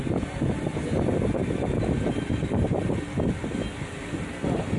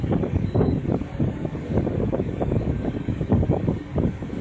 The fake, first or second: second